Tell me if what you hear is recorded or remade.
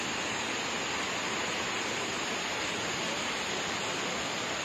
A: recorded